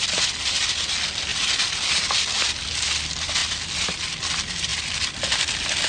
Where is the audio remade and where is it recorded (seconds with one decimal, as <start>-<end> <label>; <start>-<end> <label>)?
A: 0.0-5.9 recorded